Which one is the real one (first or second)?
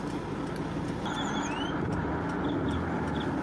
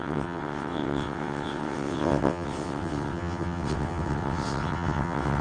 first